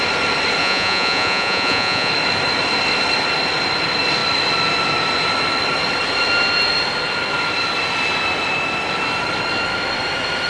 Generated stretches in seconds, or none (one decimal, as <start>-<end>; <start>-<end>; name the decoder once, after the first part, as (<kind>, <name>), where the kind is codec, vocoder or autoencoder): 0.6-2.1 (vocoder, Vocos)